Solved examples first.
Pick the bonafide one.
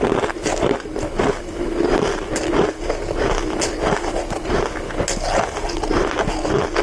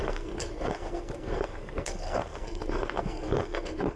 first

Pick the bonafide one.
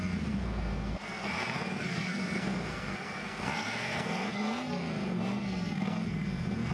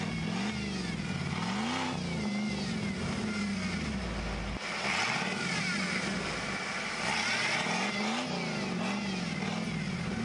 second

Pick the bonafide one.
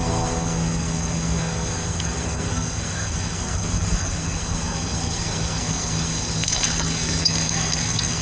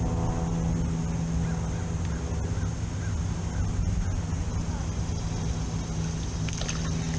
second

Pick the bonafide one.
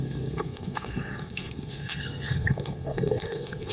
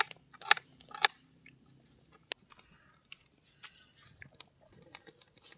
second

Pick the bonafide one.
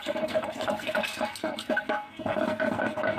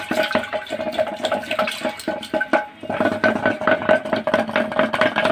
second